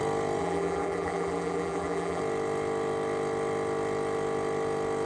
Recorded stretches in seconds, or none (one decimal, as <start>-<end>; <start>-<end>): 0.0-0.4; 2.2-5.1